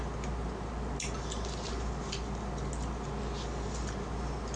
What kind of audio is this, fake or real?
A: real